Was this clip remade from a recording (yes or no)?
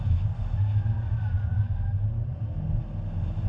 no